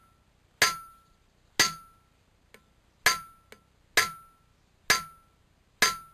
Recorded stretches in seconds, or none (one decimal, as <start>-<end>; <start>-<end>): 0.0-6.1